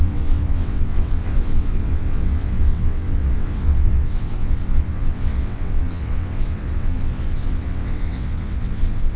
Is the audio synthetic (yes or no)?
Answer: yes